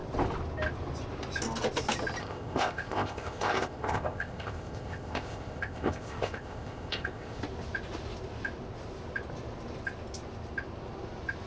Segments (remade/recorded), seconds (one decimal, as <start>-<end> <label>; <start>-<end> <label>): 0.0-2.2 recorded; 2.2-7.4 remade; 7.4-11.5 recorded